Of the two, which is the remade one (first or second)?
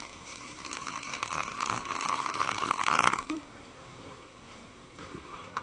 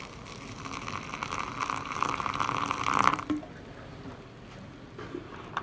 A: first